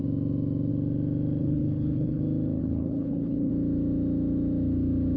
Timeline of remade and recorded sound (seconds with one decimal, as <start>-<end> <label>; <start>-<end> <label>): 0.0-1.4 recorded; 1.4-2.2 remade; 2.2-2.6 recorded; 2.6-3.5 remade; 3.5-5.2 recorded

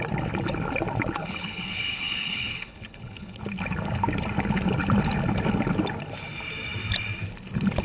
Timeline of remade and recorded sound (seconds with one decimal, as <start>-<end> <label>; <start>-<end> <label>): 0.0-1.2 recorded; 1.2-3.4 remade; 3.4-7.8 recorded

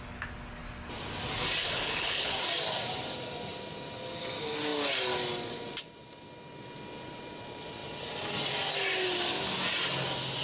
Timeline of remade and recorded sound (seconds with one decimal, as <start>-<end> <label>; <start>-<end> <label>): 0.0-1.6 recorded; 1.6-2.3 remade; 2.3-10.4 recorded

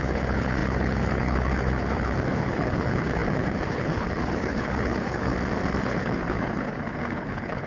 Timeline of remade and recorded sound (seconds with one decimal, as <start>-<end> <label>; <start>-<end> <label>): 0.0-5.3 remade; 5.3-5.8 recorded; 5.8-7.7 remade

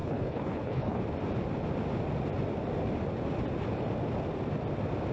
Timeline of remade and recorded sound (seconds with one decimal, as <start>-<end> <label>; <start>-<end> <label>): 0.0-1.0 remade; 1.0-5.1 recorded

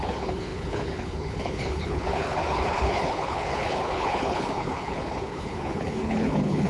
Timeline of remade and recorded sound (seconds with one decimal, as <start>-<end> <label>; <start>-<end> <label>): 0.0-6.7 remade

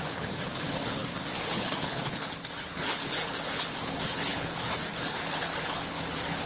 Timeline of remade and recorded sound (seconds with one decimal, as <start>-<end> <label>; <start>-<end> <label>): 0.0-6.5 remade